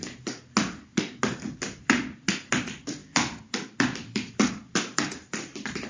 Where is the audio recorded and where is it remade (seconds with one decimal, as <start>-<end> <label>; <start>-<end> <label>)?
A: 0.0-2.6 recorded; 2.6-5.9 remade